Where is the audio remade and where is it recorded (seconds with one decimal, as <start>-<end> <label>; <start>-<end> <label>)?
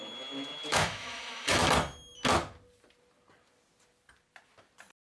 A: 0.0-0.7 recorded; 0.7-1.7 remade; 1.7-5.2 recorded